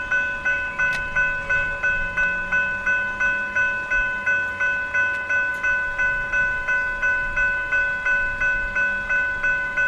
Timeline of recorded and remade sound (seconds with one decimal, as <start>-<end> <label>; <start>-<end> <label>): 0.0-9.9 recorded